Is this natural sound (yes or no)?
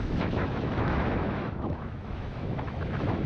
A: no